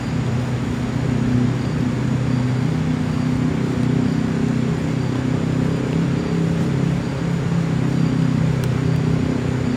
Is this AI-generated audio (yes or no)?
no